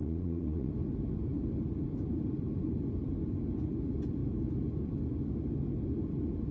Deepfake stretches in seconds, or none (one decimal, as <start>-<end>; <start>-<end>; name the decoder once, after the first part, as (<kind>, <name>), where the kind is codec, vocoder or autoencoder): 0.0-0.7 (vocoder, Vocos)